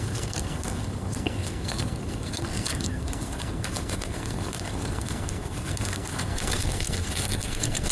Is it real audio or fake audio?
fake